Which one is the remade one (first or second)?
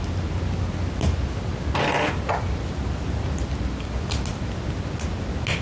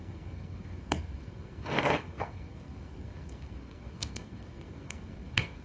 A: second